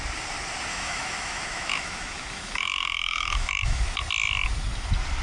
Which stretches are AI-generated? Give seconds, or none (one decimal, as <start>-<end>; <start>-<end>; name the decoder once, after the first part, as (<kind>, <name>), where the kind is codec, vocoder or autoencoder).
0.7-3.8 (autoencoder, DAC-VAE)